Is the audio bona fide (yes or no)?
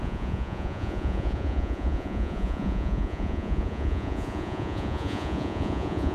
no